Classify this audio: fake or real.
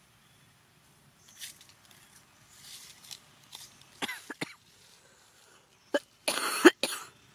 real